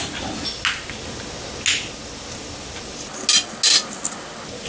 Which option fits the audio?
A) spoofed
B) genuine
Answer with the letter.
B